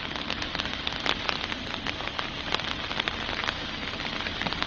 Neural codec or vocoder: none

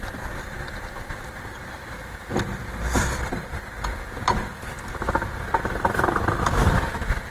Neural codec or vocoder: none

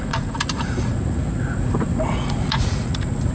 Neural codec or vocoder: vocoder, Vocos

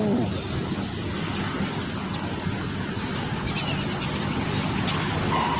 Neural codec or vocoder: none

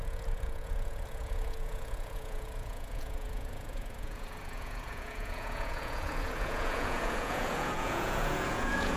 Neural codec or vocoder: vocoder, Vocos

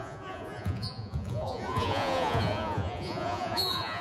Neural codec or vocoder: vocoder, Vocos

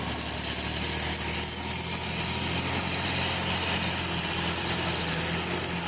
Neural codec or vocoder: none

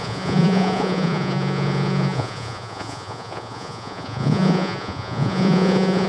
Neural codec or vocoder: vocoder, Vocos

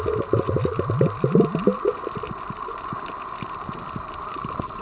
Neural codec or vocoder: none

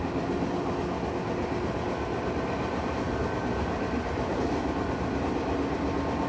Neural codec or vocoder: none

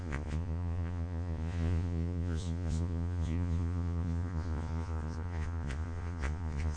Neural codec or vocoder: vocoder, Vocos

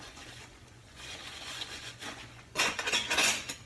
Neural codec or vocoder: vocoder, Vocos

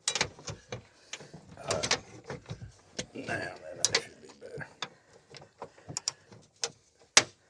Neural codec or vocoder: none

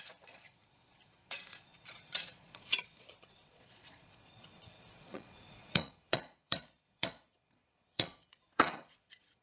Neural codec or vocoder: vocoder, Vocos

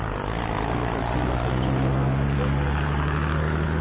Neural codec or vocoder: none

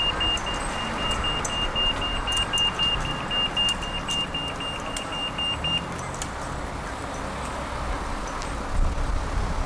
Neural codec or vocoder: none